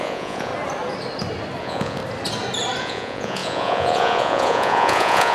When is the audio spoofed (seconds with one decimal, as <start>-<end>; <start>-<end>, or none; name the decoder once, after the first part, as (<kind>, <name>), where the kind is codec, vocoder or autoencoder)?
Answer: 0.0-0.5 (vocoder, Vocos); 1.6-2.0; 2.8-5.3